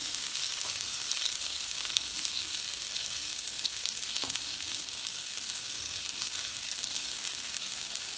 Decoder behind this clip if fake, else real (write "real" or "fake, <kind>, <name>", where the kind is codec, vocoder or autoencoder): fake, codec, SNAC